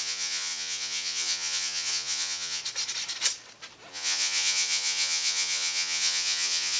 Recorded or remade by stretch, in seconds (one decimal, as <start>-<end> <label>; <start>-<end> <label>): 0.0-2.6 remade; 2.6-3.9 recorded; 3.9-6.8 remade